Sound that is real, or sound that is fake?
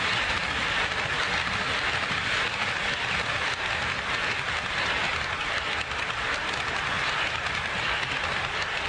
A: real